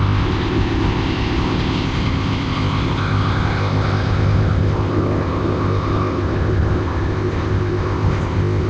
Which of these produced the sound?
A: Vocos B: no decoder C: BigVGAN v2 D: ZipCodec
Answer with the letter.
D